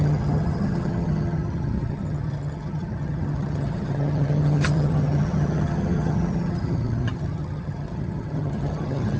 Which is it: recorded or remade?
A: remade